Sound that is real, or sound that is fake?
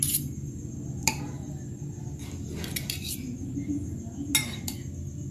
real